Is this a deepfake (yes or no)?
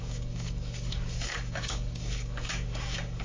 yes